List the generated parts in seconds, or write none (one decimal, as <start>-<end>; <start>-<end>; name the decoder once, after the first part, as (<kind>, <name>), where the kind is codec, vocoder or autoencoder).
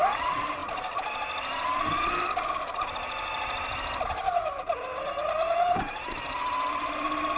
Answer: none